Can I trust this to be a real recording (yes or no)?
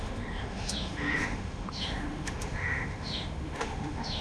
no